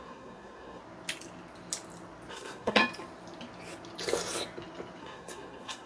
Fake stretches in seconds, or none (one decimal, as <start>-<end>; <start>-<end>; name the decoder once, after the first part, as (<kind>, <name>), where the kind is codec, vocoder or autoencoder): 0.0-0.8 (codec, SNAC); 2.3-2.8; 5.0-5.9